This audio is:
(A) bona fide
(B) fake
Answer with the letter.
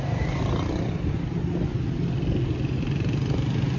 A